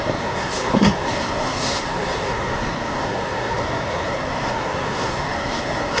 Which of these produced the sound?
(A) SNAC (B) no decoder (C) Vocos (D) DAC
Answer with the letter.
A